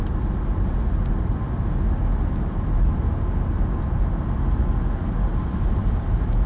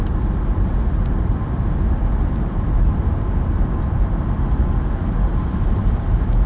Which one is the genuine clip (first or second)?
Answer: first